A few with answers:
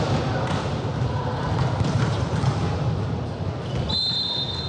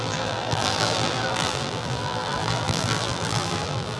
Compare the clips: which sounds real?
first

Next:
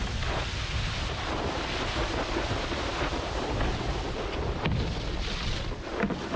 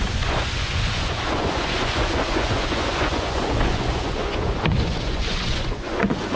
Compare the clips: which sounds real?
first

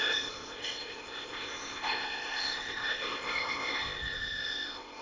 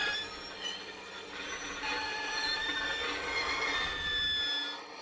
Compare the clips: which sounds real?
second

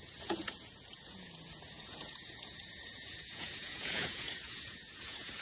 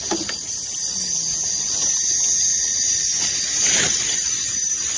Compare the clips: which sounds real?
second